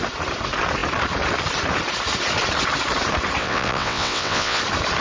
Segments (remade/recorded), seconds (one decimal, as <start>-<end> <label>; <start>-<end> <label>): 0.0-3.4 recorded; 3.4-4.6 remade; 4.6-5.0 recorded